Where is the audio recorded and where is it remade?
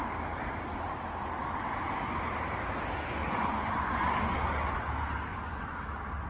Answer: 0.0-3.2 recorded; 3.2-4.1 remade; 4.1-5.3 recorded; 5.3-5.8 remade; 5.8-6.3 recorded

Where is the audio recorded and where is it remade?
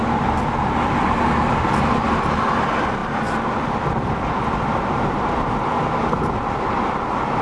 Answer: 0.0-3.0 recorded; 3.0-5.9 remade; 5.9-7.4 recorded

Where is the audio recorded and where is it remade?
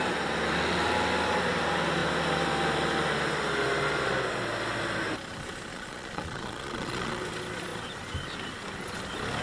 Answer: 0.0-5.7 recorded; 5.7-7.2 remade; 7.2-9.4 recorded